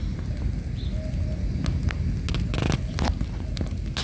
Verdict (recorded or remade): recorded